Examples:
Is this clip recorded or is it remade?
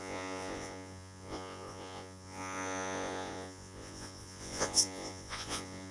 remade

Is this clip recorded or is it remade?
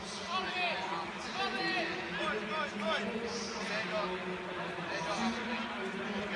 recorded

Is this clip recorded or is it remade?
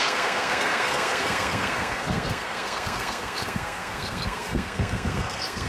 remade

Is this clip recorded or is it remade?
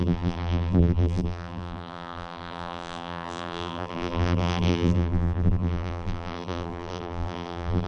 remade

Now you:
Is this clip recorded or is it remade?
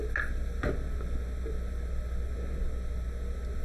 recorded